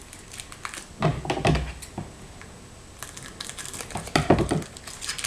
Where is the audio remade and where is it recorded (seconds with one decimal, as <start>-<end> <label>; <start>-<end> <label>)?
0.0-5.3 recorded